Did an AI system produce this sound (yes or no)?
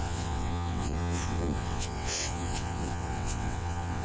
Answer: yes